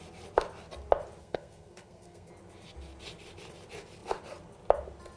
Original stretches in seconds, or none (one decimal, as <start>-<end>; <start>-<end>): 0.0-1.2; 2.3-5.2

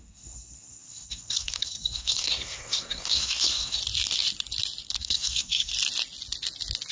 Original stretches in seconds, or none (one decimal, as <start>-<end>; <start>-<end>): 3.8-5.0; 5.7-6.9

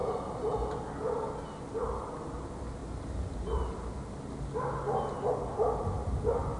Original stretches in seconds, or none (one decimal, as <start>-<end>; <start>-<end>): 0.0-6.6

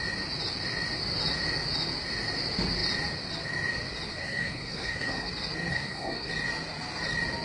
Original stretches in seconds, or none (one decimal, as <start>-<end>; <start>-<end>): 0.0-4.1; 5.3-5.7; 6.3-7.4